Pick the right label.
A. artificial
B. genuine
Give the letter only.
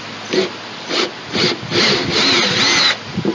B